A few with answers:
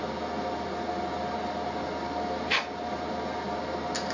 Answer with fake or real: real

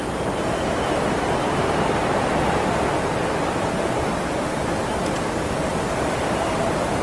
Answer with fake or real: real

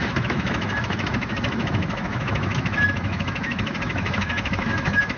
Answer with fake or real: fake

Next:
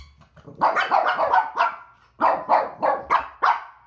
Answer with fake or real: real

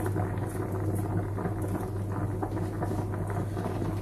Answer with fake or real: real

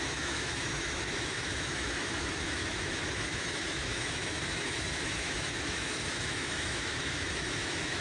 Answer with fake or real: fake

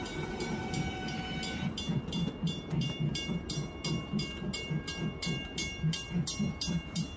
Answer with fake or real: real